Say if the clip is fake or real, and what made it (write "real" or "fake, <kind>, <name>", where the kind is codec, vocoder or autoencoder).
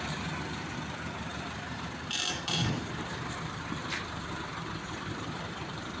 fake, vocoder, BigVGAN v2